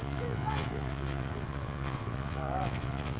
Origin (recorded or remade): remade